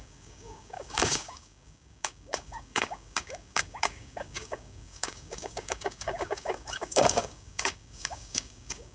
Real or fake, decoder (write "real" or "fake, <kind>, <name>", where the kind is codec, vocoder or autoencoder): fake, codec, DAC